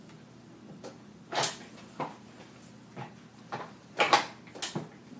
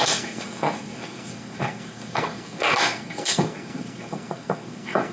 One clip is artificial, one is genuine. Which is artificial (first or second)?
second